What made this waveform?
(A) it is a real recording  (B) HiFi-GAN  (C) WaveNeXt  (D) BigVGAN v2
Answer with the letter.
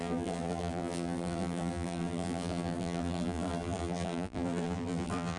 D